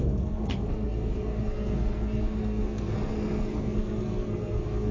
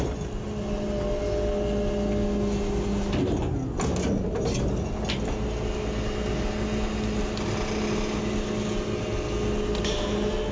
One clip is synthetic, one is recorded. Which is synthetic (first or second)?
first